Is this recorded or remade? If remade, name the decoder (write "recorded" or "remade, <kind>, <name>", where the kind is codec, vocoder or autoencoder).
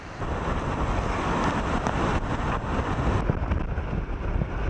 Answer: recorded